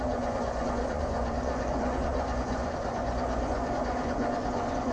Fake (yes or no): yes